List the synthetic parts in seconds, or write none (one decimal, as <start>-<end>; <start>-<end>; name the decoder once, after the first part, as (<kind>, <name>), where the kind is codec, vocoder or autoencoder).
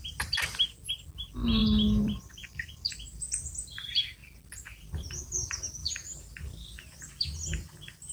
1.6-2.7 (vocoder, BigVGAN v2); 4.2-5.2